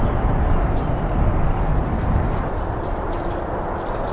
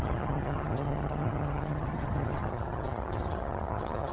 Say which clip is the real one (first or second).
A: first